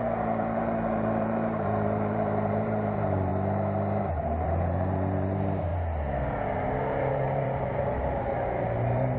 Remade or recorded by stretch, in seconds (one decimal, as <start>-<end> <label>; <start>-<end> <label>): 0.0-3.3 remade; 3.3-4.0 recorded; 4.0-5.7 remade; 5.7-7.1 recorded; 7.1-9.2 remade